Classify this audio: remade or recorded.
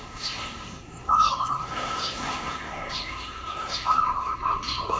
remade